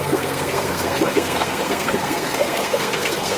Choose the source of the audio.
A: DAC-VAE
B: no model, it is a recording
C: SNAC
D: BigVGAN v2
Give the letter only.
C